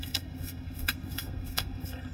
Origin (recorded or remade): remade